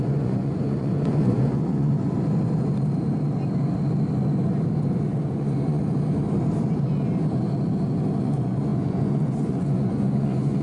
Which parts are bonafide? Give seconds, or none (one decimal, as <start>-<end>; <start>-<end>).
1.9-5.3; 5.8-8.2